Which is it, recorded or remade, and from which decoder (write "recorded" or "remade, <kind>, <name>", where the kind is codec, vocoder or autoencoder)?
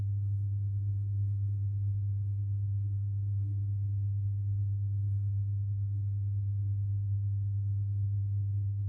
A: remade, codec, HILCodec